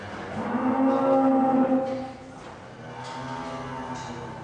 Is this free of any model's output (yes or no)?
yes